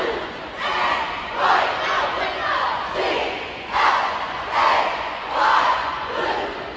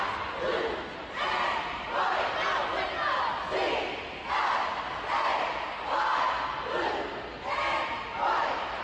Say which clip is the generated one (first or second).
first